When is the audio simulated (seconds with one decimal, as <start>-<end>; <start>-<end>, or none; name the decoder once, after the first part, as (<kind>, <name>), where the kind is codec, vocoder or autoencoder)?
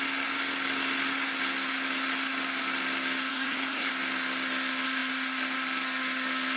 3.3-3.9 (codec, SNAC)